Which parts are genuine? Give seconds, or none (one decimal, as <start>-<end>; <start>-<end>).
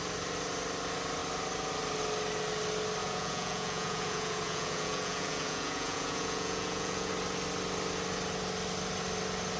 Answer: 0.0-3.0; 7.1-9.6